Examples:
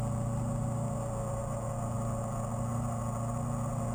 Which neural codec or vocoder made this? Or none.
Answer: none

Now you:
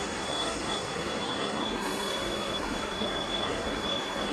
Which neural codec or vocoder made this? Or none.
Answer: codec, SNAC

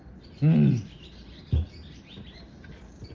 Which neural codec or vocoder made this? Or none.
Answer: none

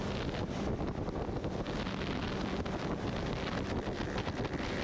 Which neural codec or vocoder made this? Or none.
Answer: none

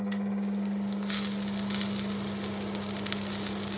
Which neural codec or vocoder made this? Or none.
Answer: none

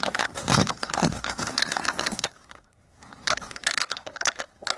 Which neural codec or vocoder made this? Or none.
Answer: codec, SNAC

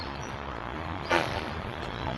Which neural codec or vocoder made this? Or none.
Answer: vocoder, Vocos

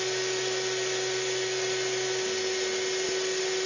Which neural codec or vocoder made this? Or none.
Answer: none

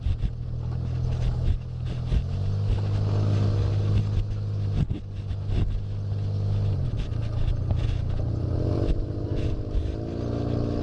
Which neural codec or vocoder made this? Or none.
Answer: none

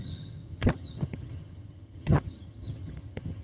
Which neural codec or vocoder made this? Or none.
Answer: vocoder, HiFi-GAN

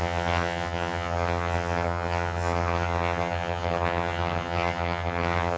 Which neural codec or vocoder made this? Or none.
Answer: vocoder, HiFi-GAN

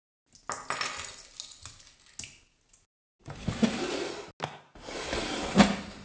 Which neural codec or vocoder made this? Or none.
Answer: none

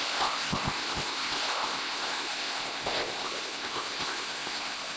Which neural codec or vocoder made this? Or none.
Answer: codec, ZipCodec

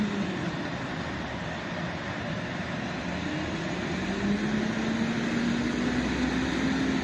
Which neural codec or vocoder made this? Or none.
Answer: none